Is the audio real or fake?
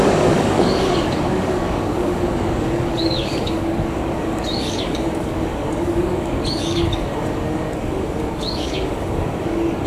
fake